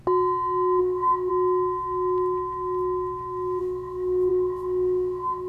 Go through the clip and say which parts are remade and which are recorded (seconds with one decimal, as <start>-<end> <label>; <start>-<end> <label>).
0.0-0.8 recorded; 0.8-1.3 remade; 1.3-3.6 recorded; 3.6-5.5 remade